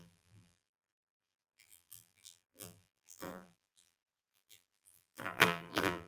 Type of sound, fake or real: fake